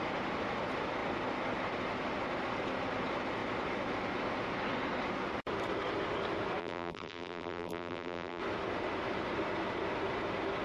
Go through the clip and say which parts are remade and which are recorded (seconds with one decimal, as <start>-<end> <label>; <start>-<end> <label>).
0.0-6.6 recorded; 6.6-8.4 remade; 8.4-10.6 recorded